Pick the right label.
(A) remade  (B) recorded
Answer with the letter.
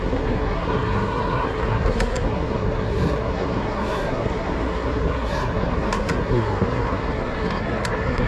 A